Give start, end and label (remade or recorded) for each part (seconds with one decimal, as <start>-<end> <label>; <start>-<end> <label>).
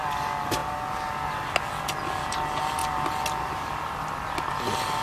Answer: 0.0-5.0 recorded